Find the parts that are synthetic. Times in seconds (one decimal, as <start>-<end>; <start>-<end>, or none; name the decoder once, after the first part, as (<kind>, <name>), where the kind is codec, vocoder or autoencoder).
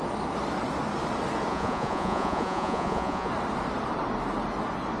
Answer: 1.5-3.3 (vocoder, Vocos)